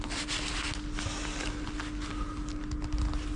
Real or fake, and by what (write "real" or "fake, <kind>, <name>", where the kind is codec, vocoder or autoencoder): real